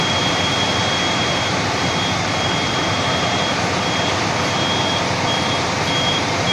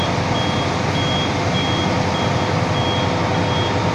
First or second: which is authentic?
second